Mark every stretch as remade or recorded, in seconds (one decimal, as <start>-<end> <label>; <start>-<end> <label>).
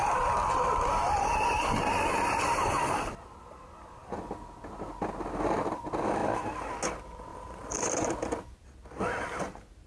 0.0-1.3 remade; 1.3-7.3 recorded; 7.3-8.1 remade; 8.1-9.9 recorded